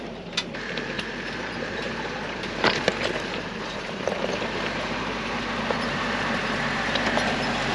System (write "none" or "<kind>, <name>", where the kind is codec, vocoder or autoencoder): vocoder, BigVGAN v2